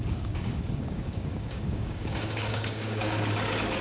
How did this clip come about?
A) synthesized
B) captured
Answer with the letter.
A